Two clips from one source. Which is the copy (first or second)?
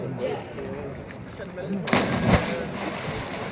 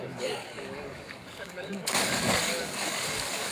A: second